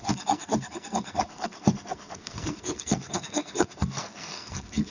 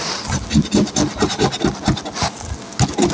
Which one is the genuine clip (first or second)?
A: second